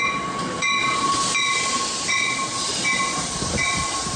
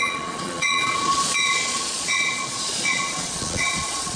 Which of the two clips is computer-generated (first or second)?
second